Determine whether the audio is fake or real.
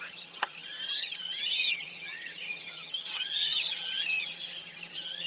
fake